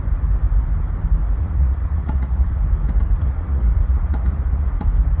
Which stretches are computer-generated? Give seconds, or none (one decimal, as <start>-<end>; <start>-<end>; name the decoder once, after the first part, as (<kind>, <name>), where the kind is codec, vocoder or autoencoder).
1.4-2.6 (vocoder, Vocos); 3.3-4.8